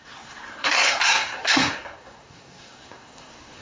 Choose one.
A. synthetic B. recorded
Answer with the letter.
A